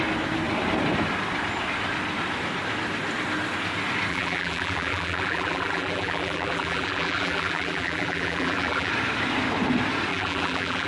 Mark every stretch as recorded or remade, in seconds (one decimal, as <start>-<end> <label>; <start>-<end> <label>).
0.0-4.1 recorded; 4.1-8.9 remade; 8.9-10.1 recorded; 10.1-10.9 remade